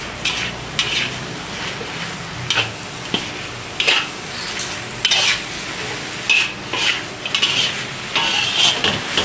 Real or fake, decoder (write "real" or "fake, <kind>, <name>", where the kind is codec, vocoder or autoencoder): real